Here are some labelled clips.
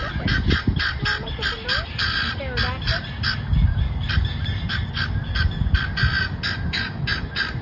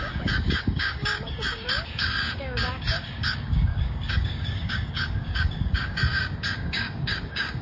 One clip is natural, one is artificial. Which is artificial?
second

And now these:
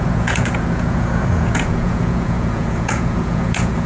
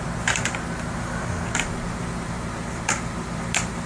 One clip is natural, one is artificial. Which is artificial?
first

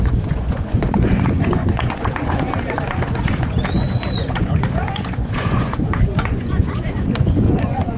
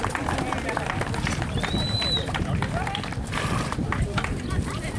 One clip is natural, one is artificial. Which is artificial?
first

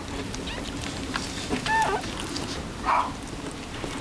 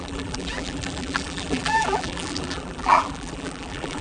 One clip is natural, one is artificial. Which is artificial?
second